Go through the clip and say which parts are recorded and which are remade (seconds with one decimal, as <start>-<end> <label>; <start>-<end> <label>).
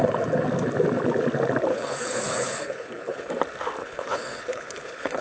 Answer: 0.0-1.7 recorded; 1.7-3.3 remade; 3.3-3.8 recorded; 3.8-5.2 remade